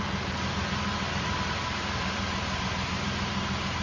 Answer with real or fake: real